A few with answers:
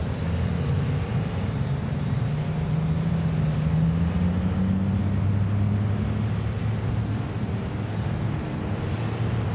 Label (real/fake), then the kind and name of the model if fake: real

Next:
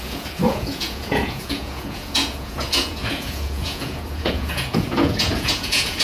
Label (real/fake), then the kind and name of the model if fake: fake, vocoder, Vocos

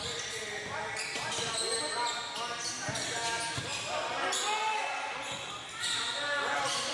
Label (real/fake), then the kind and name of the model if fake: real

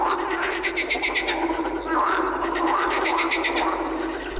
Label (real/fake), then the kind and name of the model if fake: real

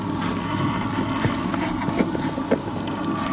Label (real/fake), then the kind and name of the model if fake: real